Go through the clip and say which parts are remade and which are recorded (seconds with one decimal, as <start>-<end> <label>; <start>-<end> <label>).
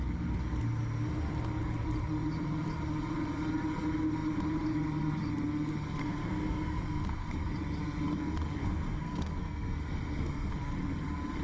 0.0-6.0 recorded; 6.0-7.5 remade; 7.5-8.6 recorded; 8.6-10.5 remade; 10.5-11.4 recorded